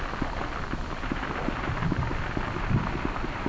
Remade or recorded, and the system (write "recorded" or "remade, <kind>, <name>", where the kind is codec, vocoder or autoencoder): recorded